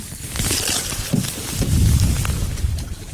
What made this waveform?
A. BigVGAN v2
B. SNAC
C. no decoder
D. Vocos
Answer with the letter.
C